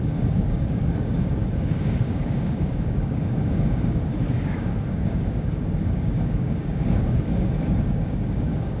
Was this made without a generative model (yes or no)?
no